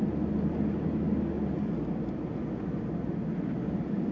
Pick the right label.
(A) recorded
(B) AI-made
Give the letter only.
A